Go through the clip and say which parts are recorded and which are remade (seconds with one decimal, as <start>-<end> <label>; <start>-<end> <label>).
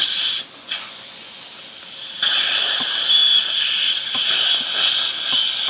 0.0-0.6 recorded; 0.6-1.4 remade; 1.4-5.7 recorded